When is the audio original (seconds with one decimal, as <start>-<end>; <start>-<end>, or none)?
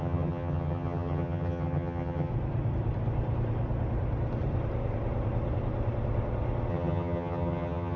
2.3-6.7